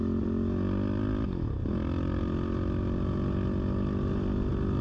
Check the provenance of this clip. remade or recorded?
recorded